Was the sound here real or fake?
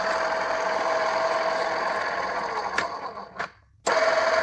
real